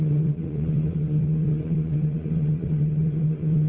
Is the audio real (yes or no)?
no